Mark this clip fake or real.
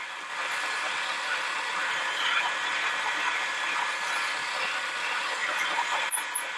real